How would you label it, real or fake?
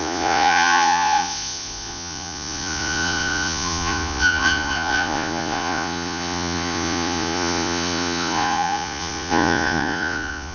fake